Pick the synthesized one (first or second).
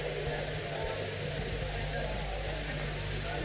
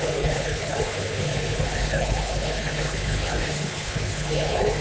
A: second